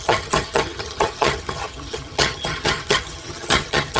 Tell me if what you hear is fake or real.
fake